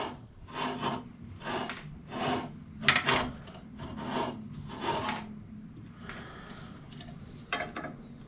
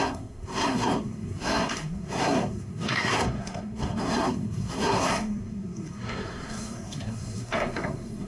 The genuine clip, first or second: first